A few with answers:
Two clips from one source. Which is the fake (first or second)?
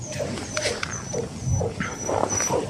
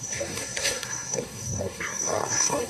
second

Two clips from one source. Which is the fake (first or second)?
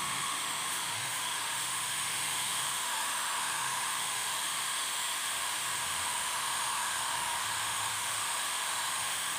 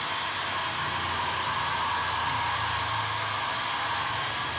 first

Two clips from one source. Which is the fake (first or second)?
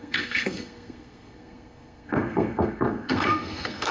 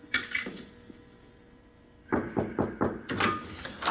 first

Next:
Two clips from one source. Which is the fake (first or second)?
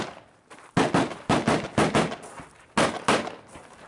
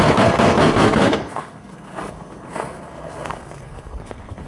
second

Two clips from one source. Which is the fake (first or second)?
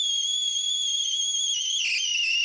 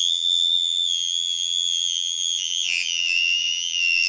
second